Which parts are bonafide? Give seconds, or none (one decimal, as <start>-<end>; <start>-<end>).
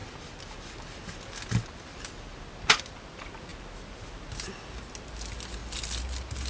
0.0-6.5